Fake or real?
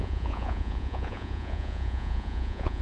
fake